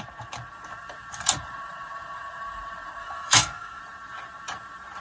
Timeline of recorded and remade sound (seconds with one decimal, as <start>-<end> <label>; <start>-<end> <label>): 0.0-3.0 recorded; 3.0-3.8 remade; 3.8-5.0 recorded